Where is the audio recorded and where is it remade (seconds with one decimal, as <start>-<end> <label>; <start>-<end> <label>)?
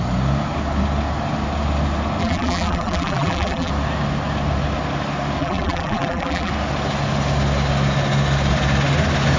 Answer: 0.0-2.2 recorded; 2.2-3.7 remade; 3.7-5.4 recorded; 5.4-6.5 remade; 6.5-9.4 recorded